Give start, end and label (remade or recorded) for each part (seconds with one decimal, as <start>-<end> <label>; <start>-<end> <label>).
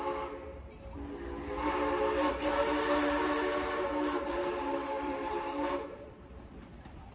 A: 0.0-2.5 recorded; 2.5-7.1 remade